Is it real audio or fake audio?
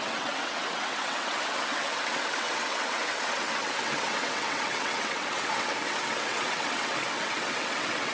fake